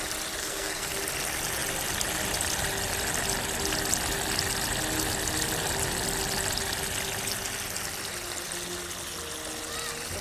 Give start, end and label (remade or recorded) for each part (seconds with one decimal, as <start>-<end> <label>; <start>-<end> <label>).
0.0-0.4 recorded; 0.4-0.9 remade; 0.9-10.2 recorded